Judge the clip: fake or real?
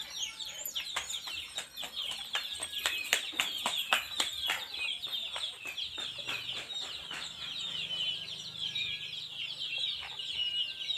real